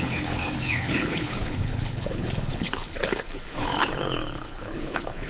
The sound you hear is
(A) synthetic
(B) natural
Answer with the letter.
A